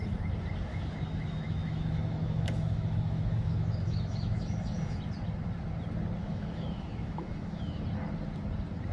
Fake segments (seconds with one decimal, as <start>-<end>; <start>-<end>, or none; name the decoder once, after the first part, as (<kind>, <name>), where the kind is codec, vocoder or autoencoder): 0.7-5.0 (autoencoder, DAC-VAE); 6.2-7.8